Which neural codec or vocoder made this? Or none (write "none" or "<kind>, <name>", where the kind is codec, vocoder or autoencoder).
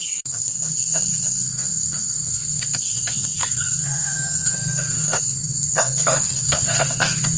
codec, SNAC